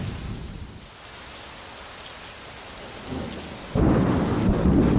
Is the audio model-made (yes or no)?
no